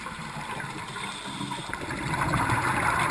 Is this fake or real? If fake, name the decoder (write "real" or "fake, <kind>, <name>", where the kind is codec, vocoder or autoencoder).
fake, vocoder, BigVGAN v2